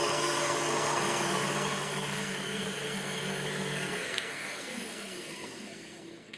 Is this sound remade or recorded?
remade